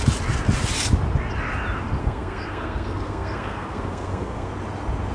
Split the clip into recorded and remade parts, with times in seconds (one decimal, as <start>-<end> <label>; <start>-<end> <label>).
0.0-2.0 recorded; 2.0-4.5 remade; 4.5-5.1 recorded